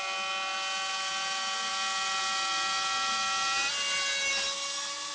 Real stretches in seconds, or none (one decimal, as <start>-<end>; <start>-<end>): 0.0-5.1

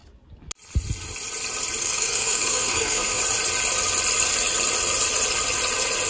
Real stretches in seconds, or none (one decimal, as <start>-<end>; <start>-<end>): 0.0-1.8; 3.2-6.1

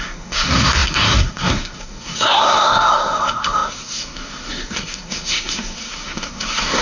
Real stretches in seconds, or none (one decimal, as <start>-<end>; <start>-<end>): none

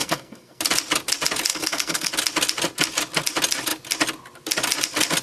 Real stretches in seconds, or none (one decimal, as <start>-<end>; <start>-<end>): 0.6-1.5; 2.1-5.2

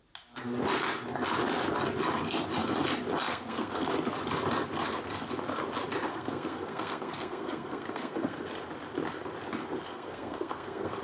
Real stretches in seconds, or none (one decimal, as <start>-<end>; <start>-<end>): 0.0-3.3; 3.9-6.1; 8.5-9.9

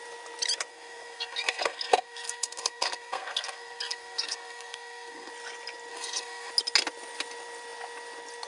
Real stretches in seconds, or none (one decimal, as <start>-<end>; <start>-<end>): 0.0-0.7; 5.3-5.9; 6.5-8.5

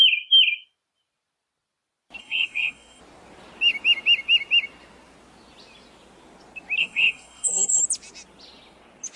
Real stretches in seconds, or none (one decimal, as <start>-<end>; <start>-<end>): 0.0-2.2; 3.0-6.8; 7.8-9.2

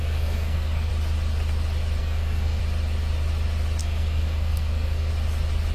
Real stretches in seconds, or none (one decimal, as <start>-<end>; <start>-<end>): 0.9-2.0; 2.6-3.8; 5.1-5.7